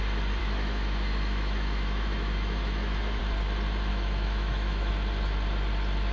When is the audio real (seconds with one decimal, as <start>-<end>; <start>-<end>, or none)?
0.0-0.4; 3.2-3.9; 4.9-6.1